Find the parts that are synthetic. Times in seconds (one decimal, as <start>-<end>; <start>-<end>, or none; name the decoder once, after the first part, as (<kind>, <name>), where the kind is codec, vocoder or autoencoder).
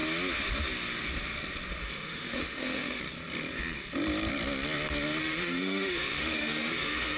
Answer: 1.8-3.0 (autoencoder, DAC-VAE); 5.2-7.2